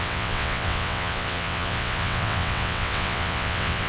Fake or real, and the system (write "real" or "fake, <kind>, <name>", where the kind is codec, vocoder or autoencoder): fake, vocoder, WaveNeXt